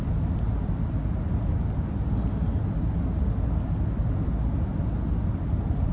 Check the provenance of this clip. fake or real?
real